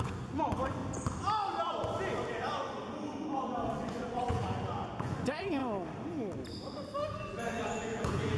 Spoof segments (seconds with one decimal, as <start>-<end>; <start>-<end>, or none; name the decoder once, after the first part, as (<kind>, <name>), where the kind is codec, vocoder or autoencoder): 0.0-0.8 (vocoder, Vocos); 3.4-5.6; 7.2-8.4